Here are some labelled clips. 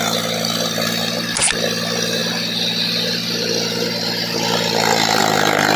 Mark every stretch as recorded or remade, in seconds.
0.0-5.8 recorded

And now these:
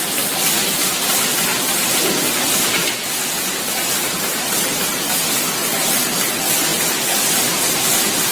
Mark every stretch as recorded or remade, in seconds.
0.0-1.5 recorded; 1.5-5.2 remade; 5.2-8.3 recorded

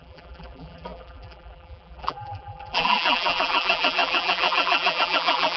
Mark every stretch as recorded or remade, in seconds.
0.0-5.6 remade

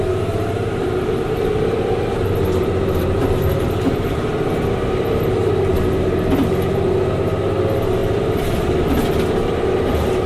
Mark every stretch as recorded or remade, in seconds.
0.0-0.8 recorded; 0.8-4.3 remade; 4.3-8.0 recorded; 8.0-8.6 remade; 8.6-10.3 recorded

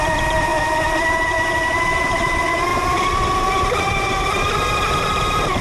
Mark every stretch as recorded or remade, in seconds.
0.0-0.5 remade; 0.5-1.8 recorded; 1.8-5.6 remade

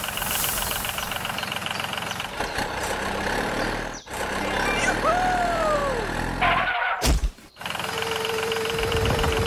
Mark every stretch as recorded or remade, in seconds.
0.0-5.8 remade; 5.8-6.6 recorded; 6.6-9.5 remade

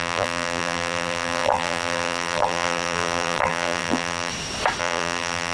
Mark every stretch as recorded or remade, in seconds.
0.0-4.3 remade; 4.3-4.8 recorded; 4.8-5.5 remade